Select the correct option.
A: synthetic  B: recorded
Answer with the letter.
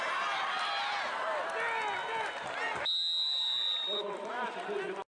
B